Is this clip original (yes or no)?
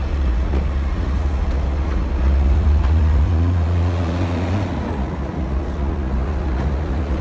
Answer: no